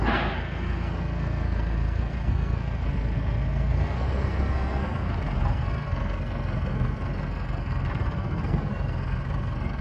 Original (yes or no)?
no